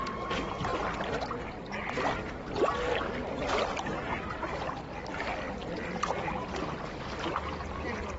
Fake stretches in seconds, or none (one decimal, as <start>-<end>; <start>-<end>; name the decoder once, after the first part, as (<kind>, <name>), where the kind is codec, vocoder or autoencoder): none